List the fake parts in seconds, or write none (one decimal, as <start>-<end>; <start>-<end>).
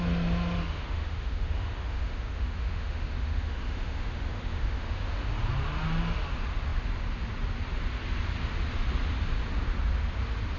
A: 0.6-5.3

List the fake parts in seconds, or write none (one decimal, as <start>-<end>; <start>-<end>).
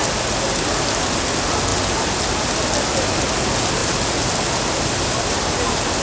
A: none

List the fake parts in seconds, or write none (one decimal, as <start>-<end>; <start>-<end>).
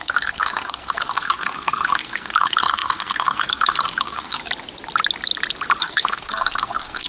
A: 0.0-4.4; 5.8-7.1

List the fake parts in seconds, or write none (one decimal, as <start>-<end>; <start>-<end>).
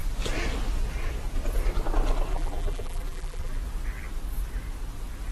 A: 2.3-3.6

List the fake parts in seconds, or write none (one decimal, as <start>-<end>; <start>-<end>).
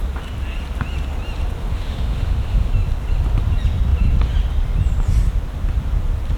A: 1.6-2.7